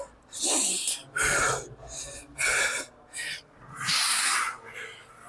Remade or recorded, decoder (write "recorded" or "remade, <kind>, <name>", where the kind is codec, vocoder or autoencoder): recorded